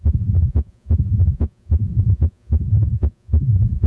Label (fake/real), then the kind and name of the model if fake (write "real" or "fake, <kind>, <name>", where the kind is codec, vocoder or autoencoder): fake, vocoder, Vocos